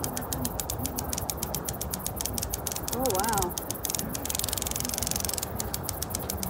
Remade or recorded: recorded